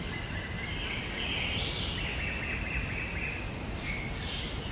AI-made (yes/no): no